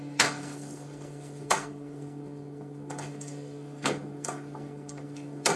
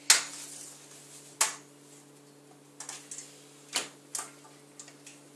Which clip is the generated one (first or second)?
first